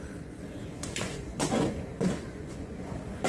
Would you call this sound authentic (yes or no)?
no